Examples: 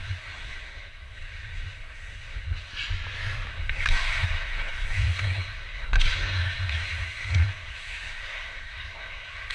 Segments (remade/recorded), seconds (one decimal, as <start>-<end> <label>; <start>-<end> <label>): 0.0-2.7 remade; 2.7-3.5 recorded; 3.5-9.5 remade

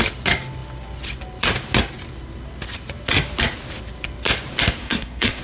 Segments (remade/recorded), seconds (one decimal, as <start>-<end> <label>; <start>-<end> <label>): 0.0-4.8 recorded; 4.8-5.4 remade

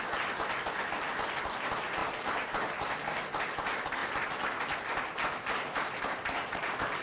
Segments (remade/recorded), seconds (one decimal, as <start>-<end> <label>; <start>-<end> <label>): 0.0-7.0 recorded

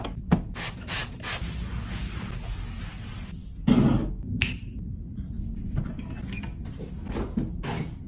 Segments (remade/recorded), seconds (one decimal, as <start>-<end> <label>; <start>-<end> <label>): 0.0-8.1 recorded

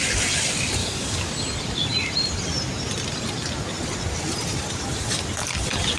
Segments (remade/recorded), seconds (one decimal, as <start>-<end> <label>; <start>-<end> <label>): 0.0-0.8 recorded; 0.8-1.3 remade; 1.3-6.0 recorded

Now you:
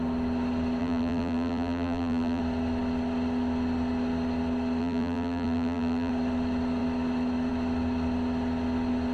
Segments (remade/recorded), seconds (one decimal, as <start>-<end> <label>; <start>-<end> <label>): 0.0-0.8 recorded; 0.8-2.4 remade; 2.4-4.8 recorded; 4.8-6.1 remade; 6.1-9.1 recorded